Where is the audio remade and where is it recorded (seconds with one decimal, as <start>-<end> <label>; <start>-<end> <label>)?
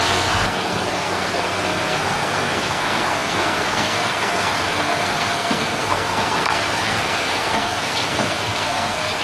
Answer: 0.0-9.2 remade